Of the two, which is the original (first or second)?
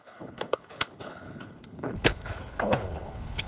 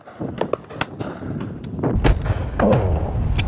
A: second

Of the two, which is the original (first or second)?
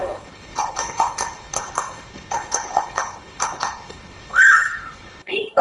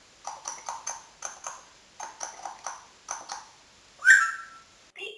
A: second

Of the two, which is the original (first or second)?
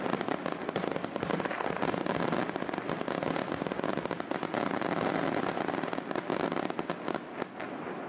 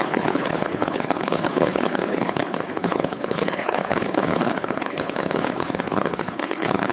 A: first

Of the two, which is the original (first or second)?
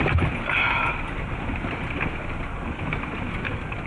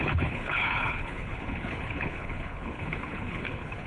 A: first